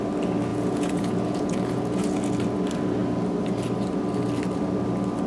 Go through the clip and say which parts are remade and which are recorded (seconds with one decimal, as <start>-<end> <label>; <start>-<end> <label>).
0.0-0.5 recorded; 0.5-2.2 remade; 2.2-5.3 recorded